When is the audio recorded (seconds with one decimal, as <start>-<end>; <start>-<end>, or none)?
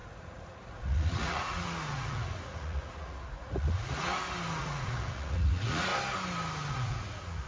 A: 4.1-4.6; 5.9-6.7